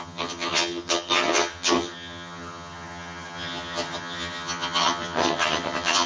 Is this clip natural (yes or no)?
no